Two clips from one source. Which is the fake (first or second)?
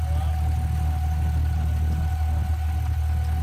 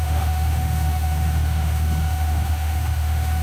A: second